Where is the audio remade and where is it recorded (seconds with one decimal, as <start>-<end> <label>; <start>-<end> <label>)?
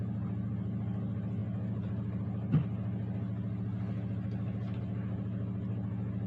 0.0-6.3 recorded